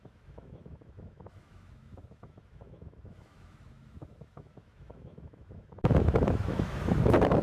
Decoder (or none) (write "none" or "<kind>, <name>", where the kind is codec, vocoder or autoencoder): autoencoder, DAC-VAE